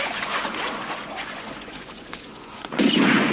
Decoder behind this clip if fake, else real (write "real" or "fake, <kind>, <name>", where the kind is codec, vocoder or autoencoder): fake, vocoder, Vocos